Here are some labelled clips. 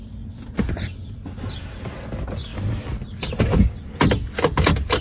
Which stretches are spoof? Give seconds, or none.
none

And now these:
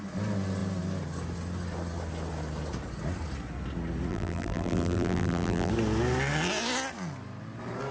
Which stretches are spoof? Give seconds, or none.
4.1-5.7

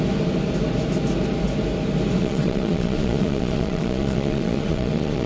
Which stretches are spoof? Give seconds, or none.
2.2-5.3

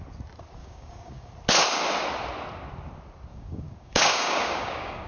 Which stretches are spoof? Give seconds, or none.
0.6-1.3; 3.3-5.1

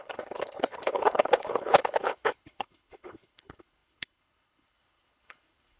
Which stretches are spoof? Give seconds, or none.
0.0-5.8